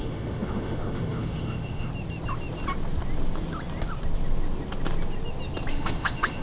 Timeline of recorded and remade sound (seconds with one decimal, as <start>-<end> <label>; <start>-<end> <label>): 0.0-1.9 remade; 1.9-5.7 recorded; 5.7-6.4 remade